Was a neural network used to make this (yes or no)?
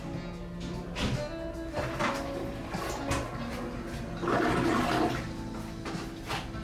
no